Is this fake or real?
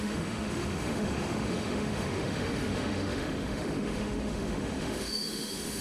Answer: fake